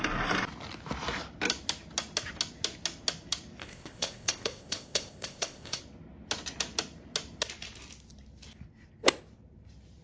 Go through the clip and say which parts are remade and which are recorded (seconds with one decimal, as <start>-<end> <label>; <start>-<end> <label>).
0.0-3.6 recorded; 3.6-5.8 remade; 5.8-10.0 recorded